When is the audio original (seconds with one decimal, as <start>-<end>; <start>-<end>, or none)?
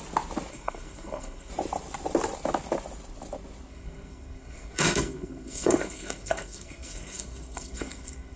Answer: 0.0-0.5; 1.5-3.7